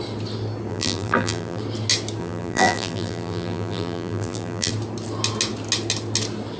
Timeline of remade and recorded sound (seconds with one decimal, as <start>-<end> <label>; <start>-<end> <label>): 0.0-0.7 recorded; 0.7-1.6 remade; 1.6-2.2 recorded; 2.2-4.7 remade; 4.7-6.6 recorded